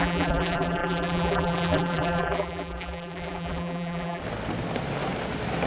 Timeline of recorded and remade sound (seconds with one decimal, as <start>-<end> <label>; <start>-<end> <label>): 0.0-4.2 remade; 4.2-5.7 recorded